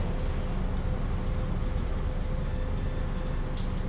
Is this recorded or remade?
recorded